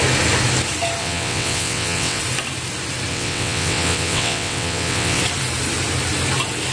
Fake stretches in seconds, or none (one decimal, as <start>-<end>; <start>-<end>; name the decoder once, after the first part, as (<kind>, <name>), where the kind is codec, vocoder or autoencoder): 1.0-2.2 (vocoder, WaveNeXt); 3.1-5.2